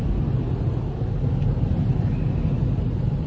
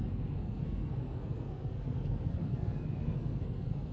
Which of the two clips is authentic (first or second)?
first